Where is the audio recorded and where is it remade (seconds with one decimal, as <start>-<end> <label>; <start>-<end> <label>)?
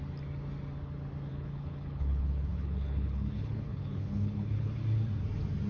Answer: 0.0-1.3 recorded; 1.3-4.7 remade; 4.7-5.7 recorded